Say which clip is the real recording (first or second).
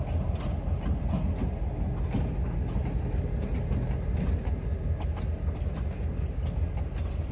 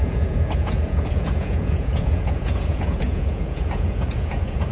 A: first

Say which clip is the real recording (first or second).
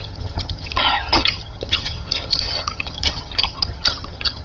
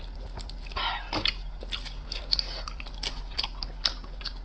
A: second